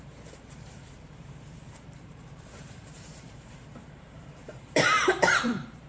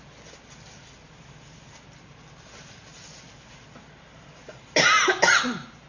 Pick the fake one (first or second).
first